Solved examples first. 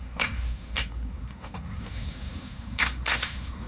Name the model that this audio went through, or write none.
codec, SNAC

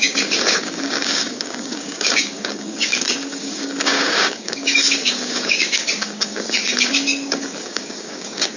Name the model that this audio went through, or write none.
codec, DAC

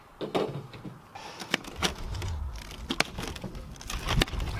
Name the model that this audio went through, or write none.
none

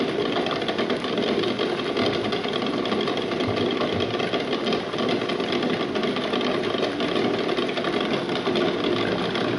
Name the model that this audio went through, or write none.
none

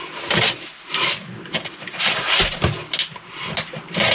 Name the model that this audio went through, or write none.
none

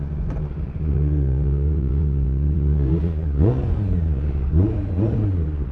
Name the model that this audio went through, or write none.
vocoder, Vocos